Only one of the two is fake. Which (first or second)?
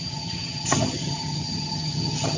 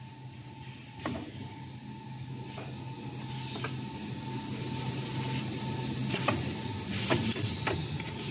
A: first